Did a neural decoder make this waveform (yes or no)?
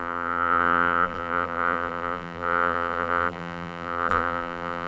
yes